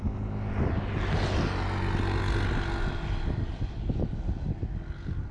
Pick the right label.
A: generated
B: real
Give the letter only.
B